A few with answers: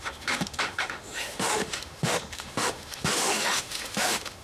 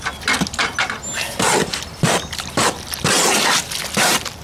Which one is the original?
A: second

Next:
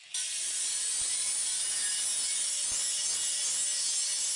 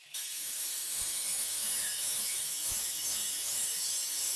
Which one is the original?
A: first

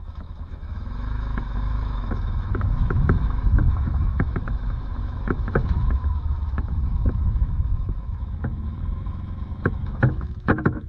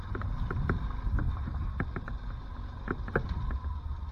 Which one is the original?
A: second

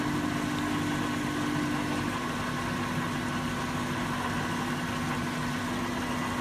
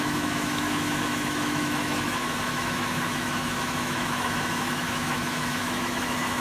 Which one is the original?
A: first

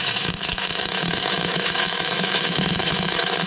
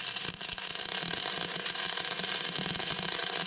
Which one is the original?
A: second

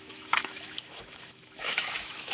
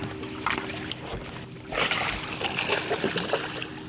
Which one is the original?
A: second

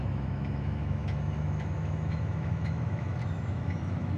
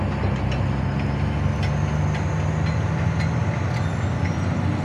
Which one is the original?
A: second